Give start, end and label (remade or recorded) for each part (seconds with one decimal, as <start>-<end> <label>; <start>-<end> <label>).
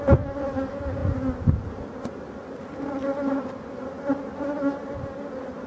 0.0-5.7 recorded